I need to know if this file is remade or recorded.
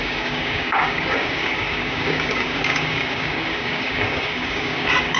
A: remade